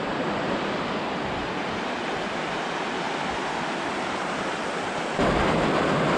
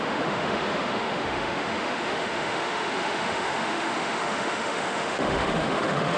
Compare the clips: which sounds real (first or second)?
first